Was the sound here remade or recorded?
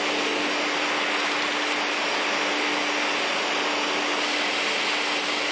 recorded